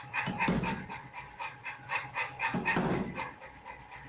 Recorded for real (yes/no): yes